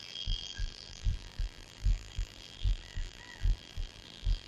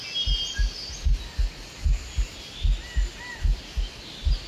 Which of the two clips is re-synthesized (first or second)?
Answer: first